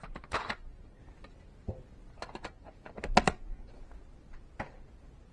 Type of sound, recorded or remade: recorded